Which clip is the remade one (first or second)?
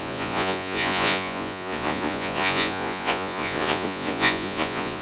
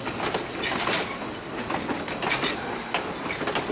first